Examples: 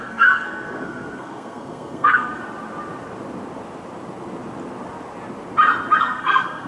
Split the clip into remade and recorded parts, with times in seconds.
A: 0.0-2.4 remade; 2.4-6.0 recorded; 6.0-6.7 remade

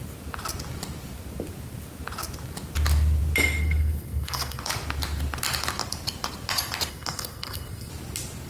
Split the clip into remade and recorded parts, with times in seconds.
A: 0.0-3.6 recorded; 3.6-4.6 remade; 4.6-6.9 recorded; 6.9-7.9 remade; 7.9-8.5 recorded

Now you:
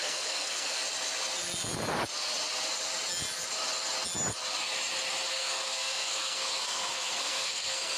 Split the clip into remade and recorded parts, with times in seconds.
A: 0.0-0.8 remade; 0.8-5.3 recorded; 5.3-8.0 remade

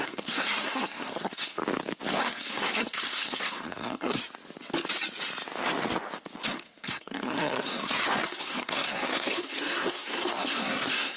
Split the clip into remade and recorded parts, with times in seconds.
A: 0.0-1.6 remade; 1.6-2.2 recorded; 2.2-4.2 remade; 4.2-6.4 recorded; 6.4-11.2 remade